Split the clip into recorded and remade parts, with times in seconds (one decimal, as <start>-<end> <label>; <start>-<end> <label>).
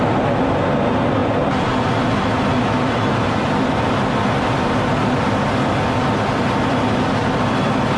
0.0-8.0 recorded